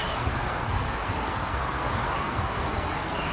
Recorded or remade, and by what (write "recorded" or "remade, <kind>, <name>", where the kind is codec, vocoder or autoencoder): remade, codec, SNAC